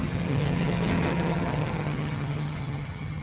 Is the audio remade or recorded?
remade